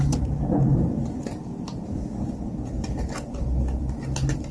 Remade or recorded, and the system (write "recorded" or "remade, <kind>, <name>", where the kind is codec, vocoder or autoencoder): recorded